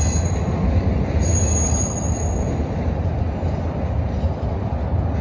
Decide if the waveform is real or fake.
real